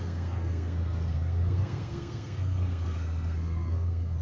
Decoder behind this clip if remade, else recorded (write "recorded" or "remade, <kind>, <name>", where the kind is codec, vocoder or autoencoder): remade, codec, SNAC